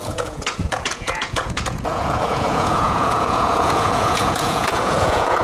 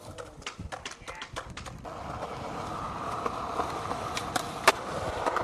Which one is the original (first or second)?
second